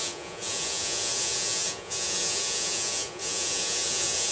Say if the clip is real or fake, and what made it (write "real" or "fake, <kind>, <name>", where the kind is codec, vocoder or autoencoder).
fake, vocoder, Vocos